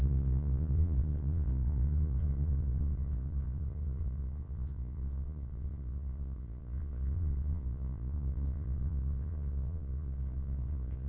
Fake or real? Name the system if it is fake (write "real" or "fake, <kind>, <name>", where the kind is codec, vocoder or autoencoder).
fake, vocoder, Vocos